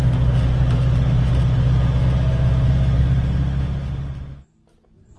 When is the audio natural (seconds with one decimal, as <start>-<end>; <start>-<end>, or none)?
0.0-5.2